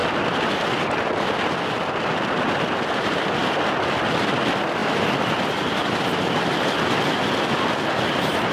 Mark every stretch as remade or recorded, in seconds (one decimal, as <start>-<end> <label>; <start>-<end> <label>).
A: 0.0-1.4 remade; 1.4-8.5 recorded